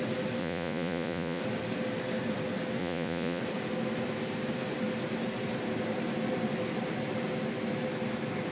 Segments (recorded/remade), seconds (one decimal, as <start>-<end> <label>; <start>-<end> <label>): 0.0-0.4 recorded; 0.4-1.4 remade; 1.4-2.8 recorded; 2.8-3.4 remade; 3.4-8.5 recorded